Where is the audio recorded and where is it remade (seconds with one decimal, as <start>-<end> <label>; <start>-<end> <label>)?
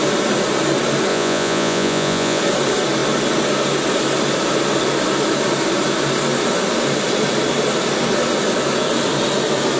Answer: 0.0-1.1 recorded; 1.1-2.4 remade; 2.4-9.8 recorded